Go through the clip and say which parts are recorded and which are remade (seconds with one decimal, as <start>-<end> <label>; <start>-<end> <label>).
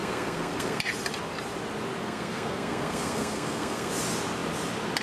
0.0-0.8 remade; 0.8-2.0 recorded; 2.0-3.9 remade; 3.9-5.0 recorded